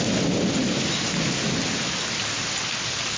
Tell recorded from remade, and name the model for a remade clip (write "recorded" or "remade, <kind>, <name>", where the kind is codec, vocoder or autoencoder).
recorded